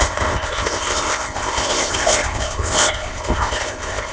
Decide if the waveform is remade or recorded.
remade